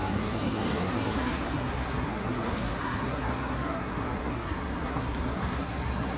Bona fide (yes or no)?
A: no